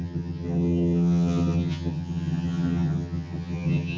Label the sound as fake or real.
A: fake